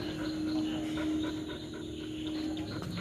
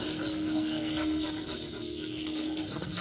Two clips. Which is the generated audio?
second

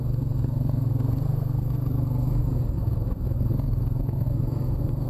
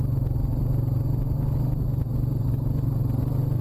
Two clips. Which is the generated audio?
first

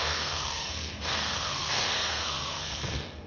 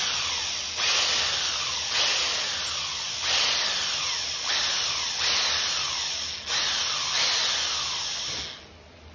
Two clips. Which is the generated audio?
first